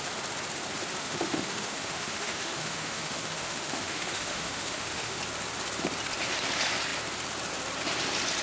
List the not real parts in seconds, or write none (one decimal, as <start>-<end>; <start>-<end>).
1.0-5.2